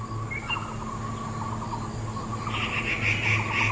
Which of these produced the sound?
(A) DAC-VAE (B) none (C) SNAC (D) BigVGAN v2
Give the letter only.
B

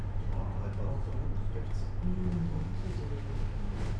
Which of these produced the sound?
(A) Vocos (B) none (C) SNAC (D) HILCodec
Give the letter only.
B